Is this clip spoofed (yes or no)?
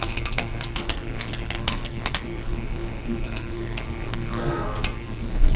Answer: yes